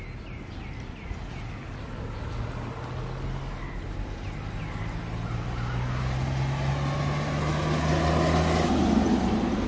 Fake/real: real